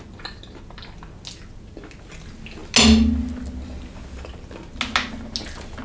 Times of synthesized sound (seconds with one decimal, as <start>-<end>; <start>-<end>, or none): none